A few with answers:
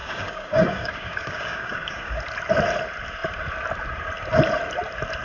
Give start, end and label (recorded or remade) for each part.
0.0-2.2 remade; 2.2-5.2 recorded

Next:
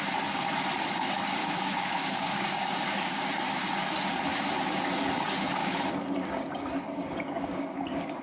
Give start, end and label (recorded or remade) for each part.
0.0-1.4 recorded; 1.4-3.3 remade; 3.3-5.6 recorded; 5.6-8.2 remade